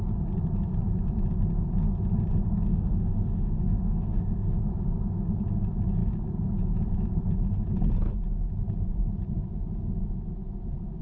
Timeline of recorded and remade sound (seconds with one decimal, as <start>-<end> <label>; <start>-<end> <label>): 0.0-2.7 recorded; 2.7-4.6 remade; 4.6-11.0 recorded